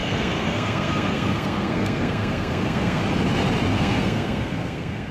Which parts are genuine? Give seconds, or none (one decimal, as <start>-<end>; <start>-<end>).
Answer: 3.0-3.7